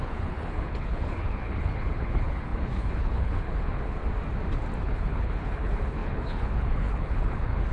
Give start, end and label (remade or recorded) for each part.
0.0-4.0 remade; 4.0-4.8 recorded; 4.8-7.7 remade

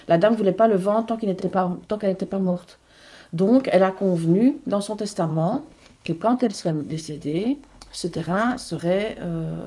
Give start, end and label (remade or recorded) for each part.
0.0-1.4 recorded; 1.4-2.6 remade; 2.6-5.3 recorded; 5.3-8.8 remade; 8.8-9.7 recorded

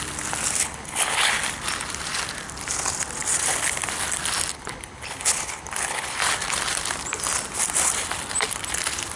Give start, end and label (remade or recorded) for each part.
0.0-0.6 recorded; 0.6-1.3 remade; 1.3-4.5 recorded; 4.5-6.2 remade; 6.2-9.2 recorded

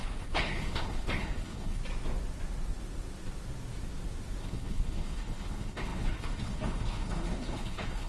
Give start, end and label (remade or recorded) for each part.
0.0-1.8 remade; 1.8-4.4 recorded; 4.4-8.1 remade

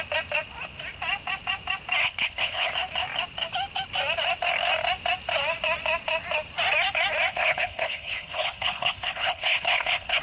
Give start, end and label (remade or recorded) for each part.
0.0-2.0 recorded; 2.0-2.7 remade; 2.7-7.3 recorded; 7.3-10.2 remade

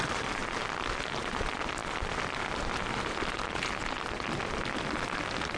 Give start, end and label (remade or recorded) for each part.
0.0-5.6 recorded